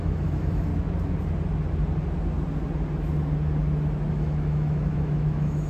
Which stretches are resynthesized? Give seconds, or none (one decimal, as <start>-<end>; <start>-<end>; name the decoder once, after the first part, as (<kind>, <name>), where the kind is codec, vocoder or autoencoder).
0.0-0.7 (autoencoder, DAC-VAE); 4.1-5.7